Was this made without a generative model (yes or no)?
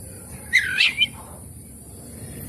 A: no